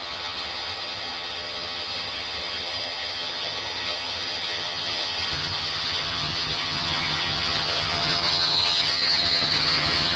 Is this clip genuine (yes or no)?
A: no